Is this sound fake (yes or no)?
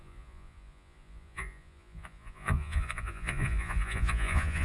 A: yes